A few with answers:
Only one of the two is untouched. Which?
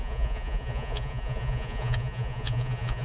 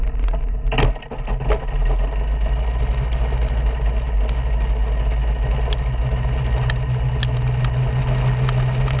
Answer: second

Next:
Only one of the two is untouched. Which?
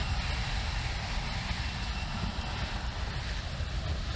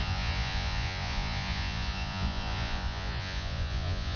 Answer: first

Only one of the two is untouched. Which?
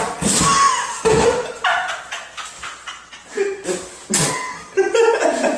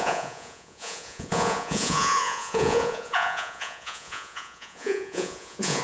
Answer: first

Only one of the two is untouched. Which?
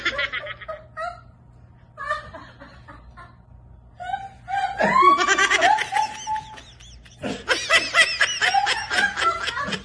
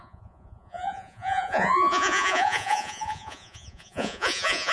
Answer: first